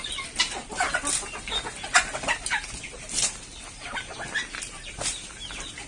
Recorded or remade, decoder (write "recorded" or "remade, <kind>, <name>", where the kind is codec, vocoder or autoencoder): recorded